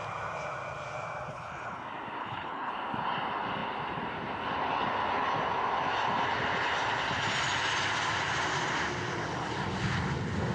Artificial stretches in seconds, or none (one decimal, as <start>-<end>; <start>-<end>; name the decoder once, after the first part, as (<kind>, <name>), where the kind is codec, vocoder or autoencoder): 1.3-1.8 (codec, HILCodec); 2.2-2.7